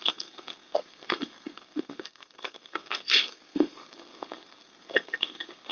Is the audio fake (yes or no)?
yes